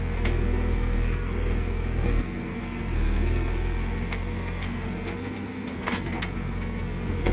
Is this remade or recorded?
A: remade